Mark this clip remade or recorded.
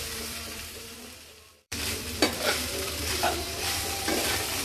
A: remade